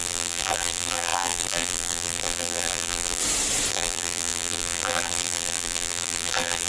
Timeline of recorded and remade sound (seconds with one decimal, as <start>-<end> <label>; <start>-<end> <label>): 0.0-3.2 remade; 3.2-3.7 recorded; 3.7-6.7 remade